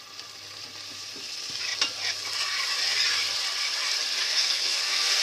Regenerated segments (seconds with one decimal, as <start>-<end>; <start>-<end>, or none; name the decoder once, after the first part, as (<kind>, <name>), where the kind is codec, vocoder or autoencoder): 4.2-5.2 (codec, SNAC)